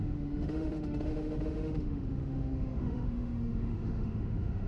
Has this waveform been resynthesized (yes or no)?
yes